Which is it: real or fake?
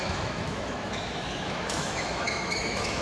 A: fake